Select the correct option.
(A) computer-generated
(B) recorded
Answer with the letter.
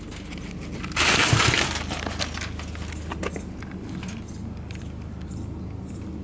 B